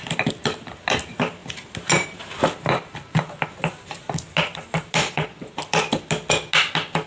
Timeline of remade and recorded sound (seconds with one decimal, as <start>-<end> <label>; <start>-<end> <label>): 0.0-5.0 recorded; 5.0-5.6 remade; 5.6-7.1 recorded